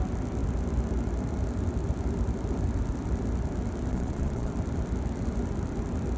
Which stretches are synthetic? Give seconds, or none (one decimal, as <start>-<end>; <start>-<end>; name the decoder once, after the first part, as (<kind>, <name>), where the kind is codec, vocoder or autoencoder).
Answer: 3.9-4.5 (vocoder, Vocos)